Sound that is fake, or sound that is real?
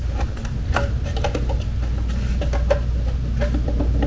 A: real